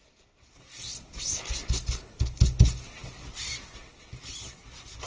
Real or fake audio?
real